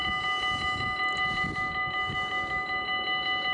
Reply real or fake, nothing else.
real